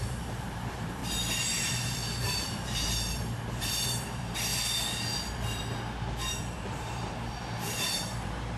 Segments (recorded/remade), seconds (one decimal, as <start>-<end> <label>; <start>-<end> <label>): 0.0-1.0 remade; 1.0-1.5 recorded; 1.5-4.5 remade; 4.5-6.4 recorded; 6.4-8.6 remade